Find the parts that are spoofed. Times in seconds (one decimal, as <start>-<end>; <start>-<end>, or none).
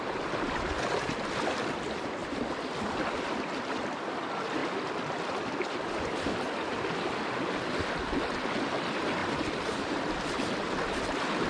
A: 2.2-3.6; 4.6-8.0; 9.2-11.0